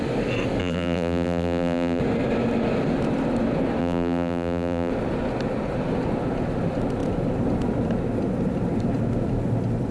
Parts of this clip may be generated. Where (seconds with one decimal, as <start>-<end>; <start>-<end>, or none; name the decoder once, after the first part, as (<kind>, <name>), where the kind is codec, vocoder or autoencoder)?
0.6-2.0 (vocoder, BigVGAN v2); 3.8-4.9